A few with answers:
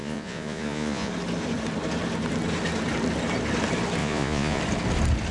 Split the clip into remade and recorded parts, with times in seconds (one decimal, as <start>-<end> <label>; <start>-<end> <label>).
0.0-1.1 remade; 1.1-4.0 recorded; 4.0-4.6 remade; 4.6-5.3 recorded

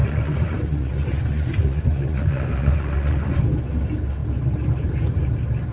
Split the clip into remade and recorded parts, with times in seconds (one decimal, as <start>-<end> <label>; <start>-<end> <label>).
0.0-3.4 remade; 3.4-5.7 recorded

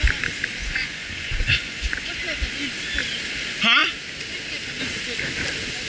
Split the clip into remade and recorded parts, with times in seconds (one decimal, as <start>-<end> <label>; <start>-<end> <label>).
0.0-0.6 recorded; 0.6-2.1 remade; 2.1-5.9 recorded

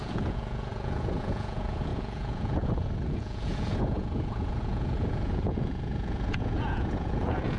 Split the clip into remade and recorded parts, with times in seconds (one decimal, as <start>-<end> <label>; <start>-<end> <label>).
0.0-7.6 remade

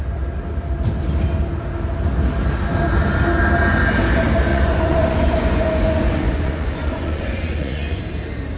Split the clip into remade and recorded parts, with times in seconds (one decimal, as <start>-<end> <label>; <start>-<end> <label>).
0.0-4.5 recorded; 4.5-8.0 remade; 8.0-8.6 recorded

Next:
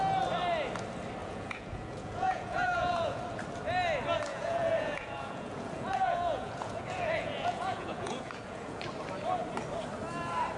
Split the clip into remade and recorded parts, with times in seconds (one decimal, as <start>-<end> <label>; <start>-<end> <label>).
0.0-1.2 recorded; 1.2-3.2 remade; 3.2-4.3 recorded; 4.3-8.8 remade; 8.8-10.6 recorded